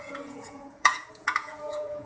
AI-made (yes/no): yes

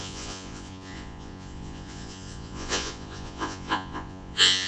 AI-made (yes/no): yes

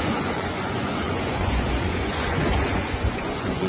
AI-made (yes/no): yes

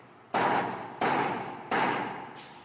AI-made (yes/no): no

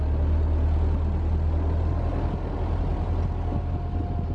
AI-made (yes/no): no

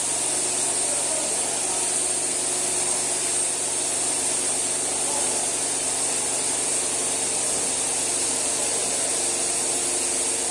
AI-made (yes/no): no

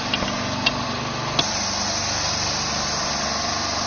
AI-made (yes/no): no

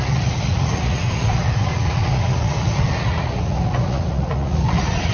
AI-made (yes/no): yes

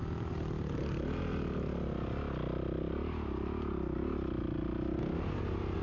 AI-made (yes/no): no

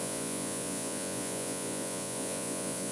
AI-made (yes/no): yes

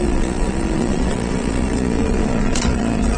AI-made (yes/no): yes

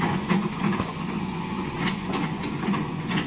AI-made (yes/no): yes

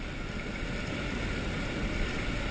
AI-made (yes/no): no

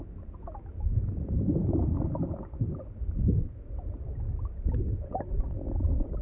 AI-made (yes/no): no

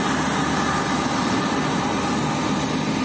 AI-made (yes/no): no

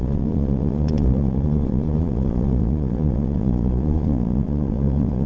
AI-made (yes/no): yes